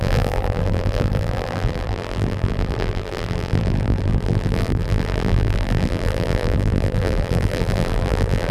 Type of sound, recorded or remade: remade